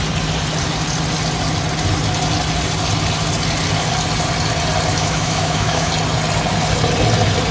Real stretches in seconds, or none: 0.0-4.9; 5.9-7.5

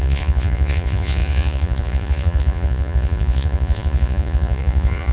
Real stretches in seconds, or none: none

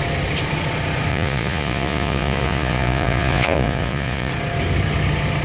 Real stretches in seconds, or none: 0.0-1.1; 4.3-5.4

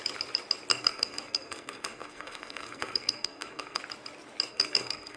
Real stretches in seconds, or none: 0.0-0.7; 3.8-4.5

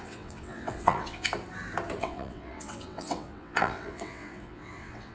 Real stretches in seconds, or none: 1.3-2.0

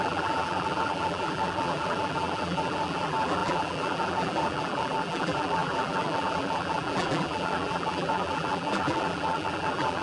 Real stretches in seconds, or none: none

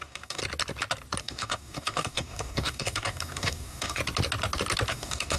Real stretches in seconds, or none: 0.4-1.2; 4.0-4.9

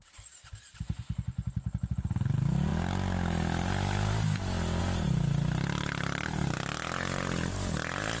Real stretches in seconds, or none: 0.0-8.2